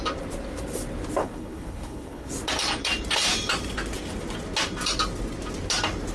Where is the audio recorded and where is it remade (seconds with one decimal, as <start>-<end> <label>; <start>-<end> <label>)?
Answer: 0.0-1.2 recorded; 1.2-2.3 remade; 2.3-6.1 recorded

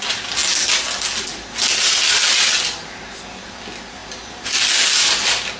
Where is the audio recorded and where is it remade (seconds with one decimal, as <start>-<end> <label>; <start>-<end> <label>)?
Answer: 0.0-5.6 recorded

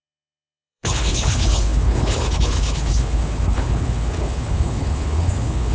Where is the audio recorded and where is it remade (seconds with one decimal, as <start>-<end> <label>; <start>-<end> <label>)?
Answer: 0.0-5.7 remade

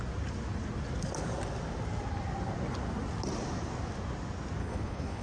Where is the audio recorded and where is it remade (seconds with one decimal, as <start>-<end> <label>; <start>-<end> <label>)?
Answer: 0.0-4.6 recorded; 4.6-5.2 remade